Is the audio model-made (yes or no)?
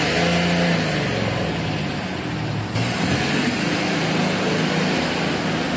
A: no